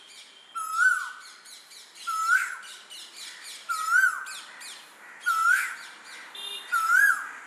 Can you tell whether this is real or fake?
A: real